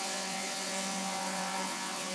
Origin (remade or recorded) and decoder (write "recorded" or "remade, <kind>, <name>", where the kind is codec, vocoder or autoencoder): remade, vocoder, WaveNeXt